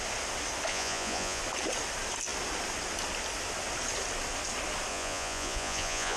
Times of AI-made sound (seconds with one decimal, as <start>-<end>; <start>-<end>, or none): 0.7-1.4; 4.9-6.2